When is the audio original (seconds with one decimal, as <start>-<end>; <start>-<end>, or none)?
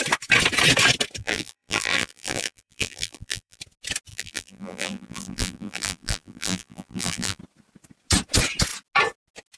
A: 0.0-1.2; 3.6-4.1; 7.4-9.6